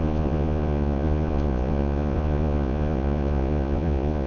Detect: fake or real fake